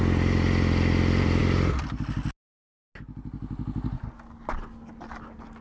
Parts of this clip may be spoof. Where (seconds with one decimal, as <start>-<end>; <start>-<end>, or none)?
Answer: none